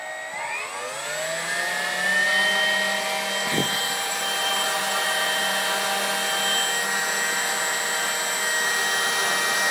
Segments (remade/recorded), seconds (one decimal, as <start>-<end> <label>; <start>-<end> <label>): 0.0-3.6 recorded; 3.6-5.7 remade; 5.7-9.7 recorded